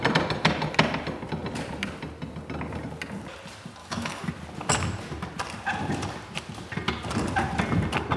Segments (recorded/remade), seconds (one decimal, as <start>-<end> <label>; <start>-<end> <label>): 0.0-3.8 recorded; 3.8-4.3 remade; 4.3-8.2 recorded